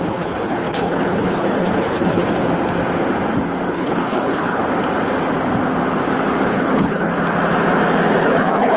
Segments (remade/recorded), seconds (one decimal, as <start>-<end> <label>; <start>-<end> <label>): 0.0-2.2 remade; 2.2-3.7 recorded; 3.7-4.6 remade; 4.6-6.5 recorded; 6.5-7.1 remade; 7.1-8.2 recorded; 8.2-8.8 remade